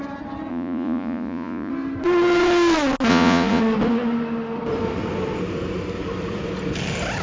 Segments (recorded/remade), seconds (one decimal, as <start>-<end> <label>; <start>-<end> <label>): 0.0-0.5 recorded; 0.5-1.7 remade; 1.7-3.1 recorded; 3.1-3.6 remade; 3.6-7.2 recorded